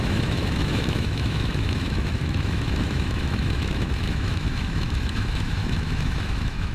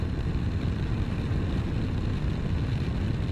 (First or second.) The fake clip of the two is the first